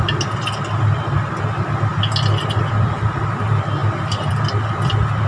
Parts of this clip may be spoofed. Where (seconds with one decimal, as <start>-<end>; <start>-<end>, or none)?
3.8-4.3